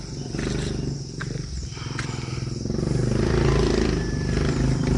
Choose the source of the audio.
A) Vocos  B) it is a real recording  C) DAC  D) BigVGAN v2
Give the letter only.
D